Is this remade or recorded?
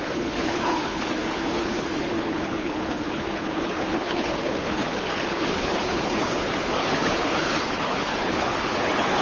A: remade